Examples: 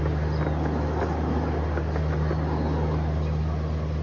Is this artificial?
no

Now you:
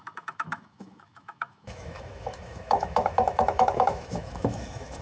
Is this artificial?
yes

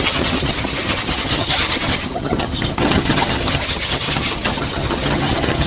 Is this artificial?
yes